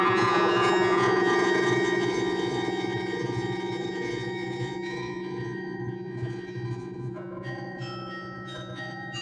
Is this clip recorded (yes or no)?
no